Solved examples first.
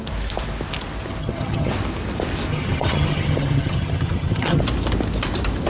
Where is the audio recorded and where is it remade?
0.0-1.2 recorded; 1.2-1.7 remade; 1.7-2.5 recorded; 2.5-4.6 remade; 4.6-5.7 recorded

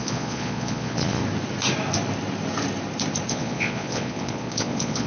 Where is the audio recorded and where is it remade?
0.0-1.2 remade; 1.2-3.3 recorded; 3.3-5.1 remade